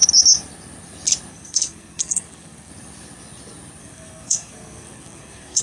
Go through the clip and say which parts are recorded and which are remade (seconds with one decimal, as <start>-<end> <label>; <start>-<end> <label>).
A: 0.0-1.3 recorded; 1.3-2.7 remade; 2.7-3.8 recorded; 3.8-5.6 remade